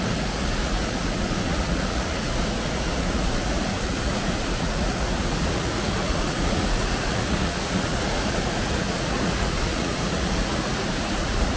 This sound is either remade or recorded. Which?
remade